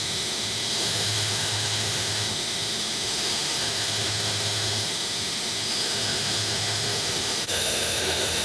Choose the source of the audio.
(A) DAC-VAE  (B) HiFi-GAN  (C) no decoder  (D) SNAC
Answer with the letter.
A